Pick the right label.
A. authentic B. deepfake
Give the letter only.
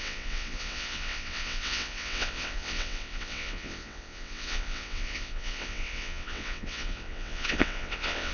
B